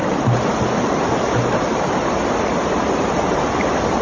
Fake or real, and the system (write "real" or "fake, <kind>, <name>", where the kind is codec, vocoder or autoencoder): real